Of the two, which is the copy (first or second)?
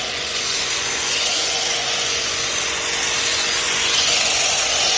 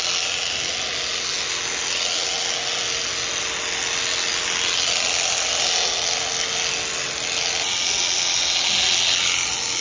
first